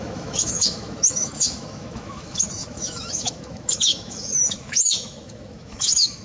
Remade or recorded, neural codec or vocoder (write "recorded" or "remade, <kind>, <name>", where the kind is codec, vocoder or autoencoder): remade, autoencoder, DAC-VAE